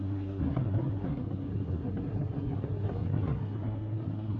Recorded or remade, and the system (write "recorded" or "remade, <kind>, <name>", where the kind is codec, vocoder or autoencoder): remade, codec, SNAC